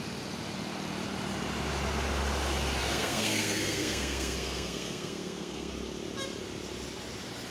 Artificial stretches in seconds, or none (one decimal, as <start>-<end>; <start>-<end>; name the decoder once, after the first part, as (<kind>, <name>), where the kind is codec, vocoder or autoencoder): 2.8-5.7 (codec, SNAC)